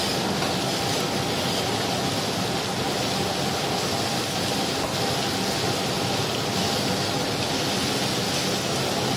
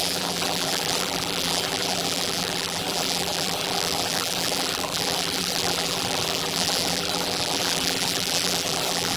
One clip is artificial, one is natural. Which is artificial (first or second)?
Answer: second